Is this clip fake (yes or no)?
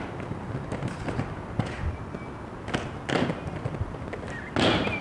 no